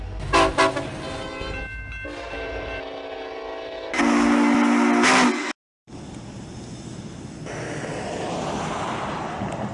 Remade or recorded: recorded